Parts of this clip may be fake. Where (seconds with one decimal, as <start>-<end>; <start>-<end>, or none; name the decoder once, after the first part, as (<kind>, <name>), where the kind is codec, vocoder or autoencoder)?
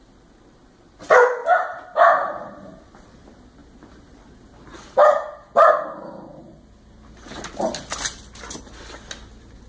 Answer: none